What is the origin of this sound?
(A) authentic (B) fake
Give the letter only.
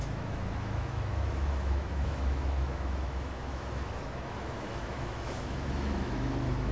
B